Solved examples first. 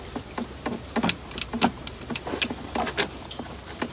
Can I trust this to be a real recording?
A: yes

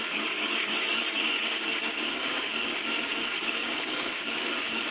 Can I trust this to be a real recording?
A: no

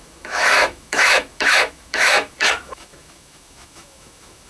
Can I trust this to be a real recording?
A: no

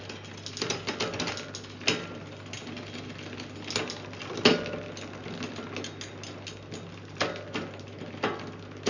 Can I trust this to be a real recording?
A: yes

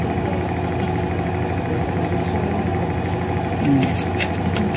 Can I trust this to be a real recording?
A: yes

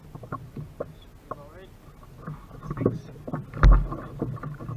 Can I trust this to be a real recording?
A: yes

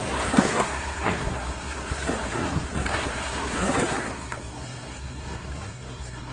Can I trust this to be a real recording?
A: no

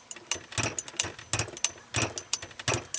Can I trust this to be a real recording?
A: yes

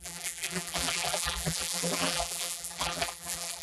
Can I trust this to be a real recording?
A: no